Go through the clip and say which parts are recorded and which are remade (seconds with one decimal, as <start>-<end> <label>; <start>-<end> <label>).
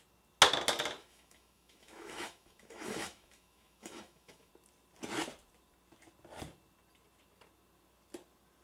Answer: 0.0-1.0 recorded; 1.0-4.5 remade; 4.5-8.6 recorded